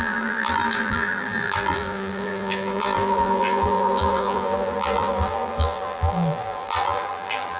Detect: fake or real fake